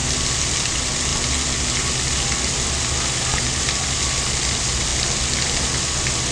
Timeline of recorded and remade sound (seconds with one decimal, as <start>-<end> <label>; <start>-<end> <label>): 0.0-6.3 recorded